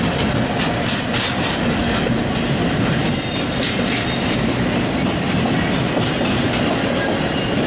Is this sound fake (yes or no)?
no